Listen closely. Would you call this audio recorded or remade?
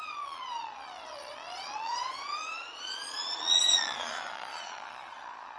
remade